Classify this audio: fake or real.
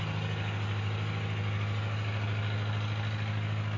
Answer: real